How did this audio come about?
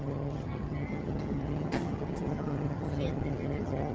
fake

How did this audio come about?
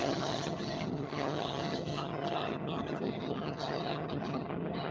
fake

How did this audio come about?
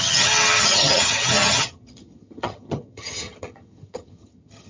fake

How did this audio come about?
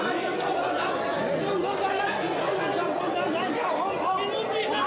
real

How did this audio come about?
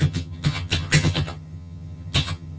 fake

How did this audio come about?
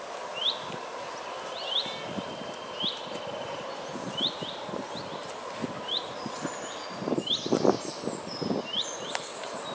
real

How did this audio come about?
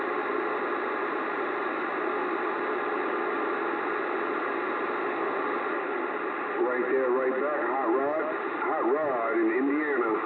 real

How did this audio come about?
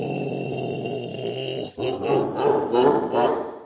real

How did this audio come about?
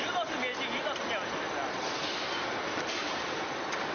real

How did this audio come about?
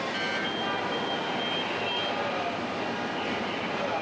real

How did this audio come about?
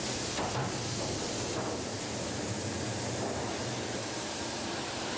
real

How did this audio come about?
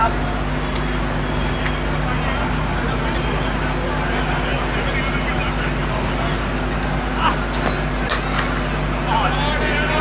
real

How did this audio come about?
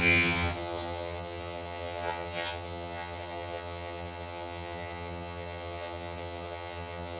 fake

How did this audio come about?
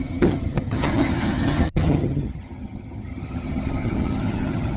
fake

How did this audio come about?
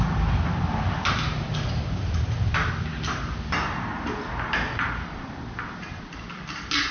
real